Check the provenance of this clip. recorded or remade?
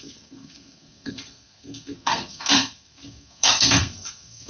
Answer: remade